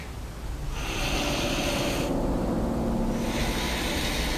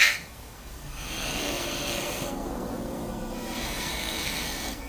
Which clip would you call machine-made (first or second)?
second